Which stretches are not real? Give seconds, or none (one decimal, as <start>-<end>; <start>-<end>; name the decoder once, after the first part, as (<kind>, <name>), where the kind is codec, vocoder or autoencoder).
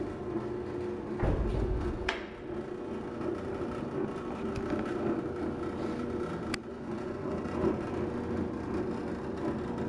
1.5-2.3 (vocoder, Vocos); 6.7-7.7